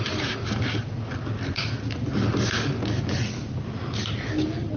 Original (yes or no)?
yes